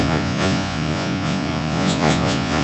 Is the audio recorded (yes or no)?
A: no